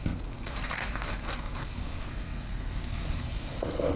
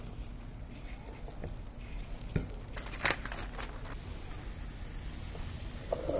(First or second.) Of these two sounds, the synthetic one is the first